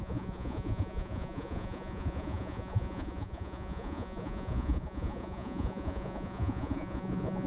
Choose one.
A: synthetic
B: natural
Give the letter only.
A